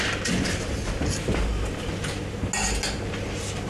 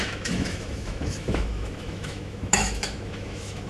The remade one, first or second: second